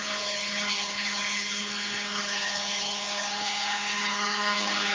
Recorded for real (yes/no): no